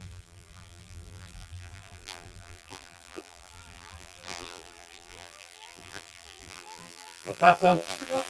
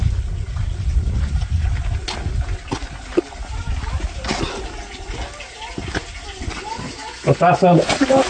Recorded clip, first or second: second